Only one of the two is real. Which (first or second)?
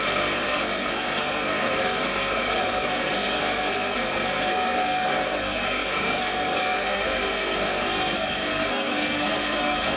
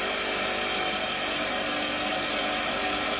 second